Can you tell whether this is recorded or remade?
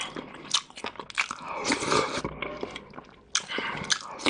recorded